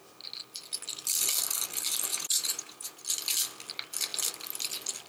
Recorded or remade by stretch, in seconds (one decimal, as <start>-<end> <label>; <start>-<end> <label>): 0.0-2.1 recorded; 2.1-3.0 remade; 3.0-5.1 recorded